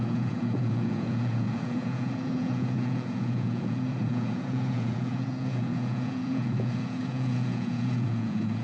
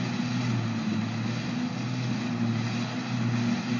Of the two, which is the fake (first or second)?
first